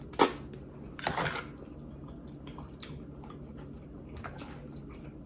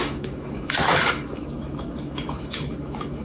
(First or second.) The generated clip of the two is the second